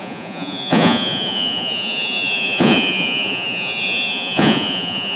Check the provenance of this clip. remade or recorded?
remade